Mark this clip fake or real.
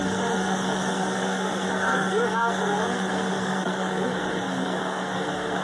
fake